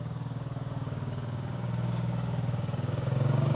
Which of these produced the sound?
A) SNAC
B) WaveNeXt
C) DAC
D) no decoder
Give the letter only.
C